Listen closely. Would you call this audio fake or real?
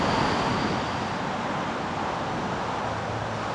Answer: real